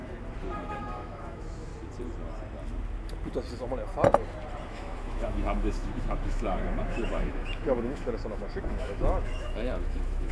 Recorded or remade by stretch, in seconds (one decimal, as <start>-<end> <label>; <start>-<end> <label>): 0.0-0.7 recorded; 0.7-1.7 remade; 1.7-4.6 recorded; 4.6-10.3 remade